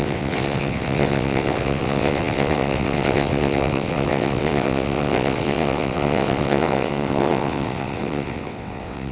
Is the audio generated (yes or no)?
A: yes